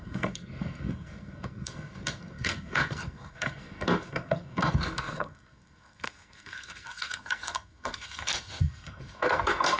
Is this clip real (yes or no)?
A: no